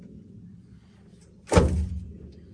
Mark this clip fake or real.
real